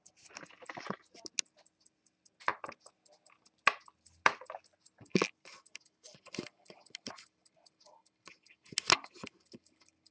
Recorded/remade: recorded